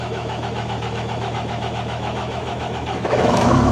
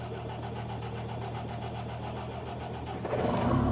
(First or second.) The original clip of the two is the second